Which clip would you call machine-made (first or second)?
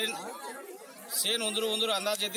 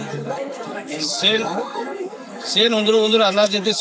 second